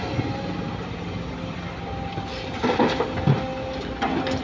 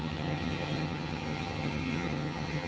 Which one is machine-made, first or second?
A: second